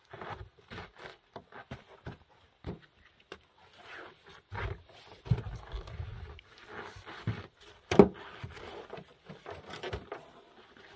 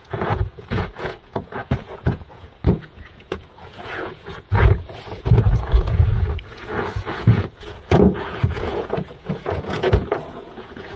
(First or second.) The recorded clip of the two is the first